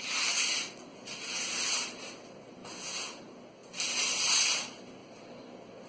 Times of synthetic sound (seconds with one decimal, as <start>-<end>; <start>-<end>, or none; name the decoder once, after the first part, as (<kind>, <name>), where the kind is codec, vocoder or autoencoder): 0.9-1.5 (vocoder, Vocos); 2.6-3.2